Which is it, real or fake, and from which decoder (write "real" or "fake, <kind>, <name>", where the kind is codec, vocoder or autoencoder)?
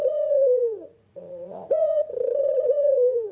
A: fake, vocoder, Vocos